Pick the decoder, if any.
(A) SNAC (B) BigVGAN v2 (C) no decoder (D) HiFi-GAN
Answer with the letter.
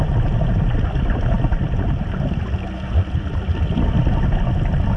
C